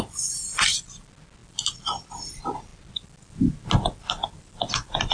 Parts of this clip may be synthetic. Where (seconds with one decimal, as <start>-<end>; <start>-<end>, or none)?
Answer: none

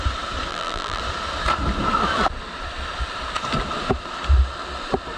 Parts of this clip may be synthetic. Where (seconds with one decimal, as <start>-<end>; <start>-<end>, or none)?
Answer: 0.5-1.0